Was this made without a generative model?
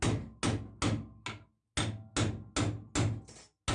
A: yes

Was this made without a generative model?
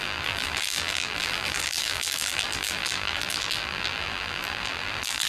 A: no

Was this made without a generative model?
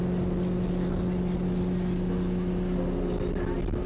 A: yes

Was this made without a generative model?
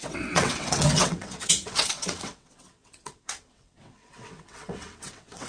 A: no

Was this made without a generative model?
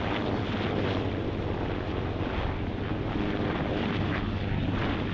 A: yes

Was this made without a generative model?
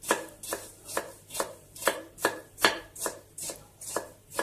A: no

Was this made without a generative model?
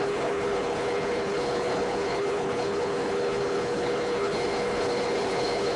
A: no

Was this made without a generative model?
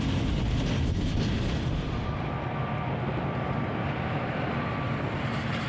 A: yes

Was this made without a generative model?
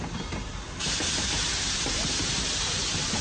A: yes